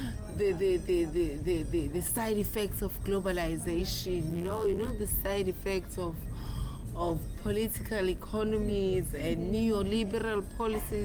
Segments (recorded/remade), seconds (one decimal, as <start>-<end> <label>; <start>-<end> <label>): 0.0-4.3 recorded; 4.3-4.9 remade; 4.9-11.0 recorded